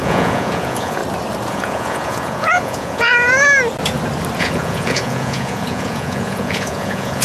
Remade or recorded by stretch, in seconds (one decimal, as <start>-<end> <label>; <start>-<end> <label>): 0.0-1.0 remade; 1.0-1.5 recorded; 1.5-3.1 remade; 3.1-4.4 recorded; 4.4-7.2 remade

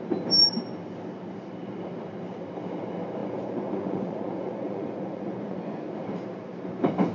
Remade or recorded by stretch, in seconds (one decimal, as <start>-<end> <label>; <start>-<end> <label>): 0.0-3.2 recorded; 3.2-5.8 remade; 5.8-7.1 recorded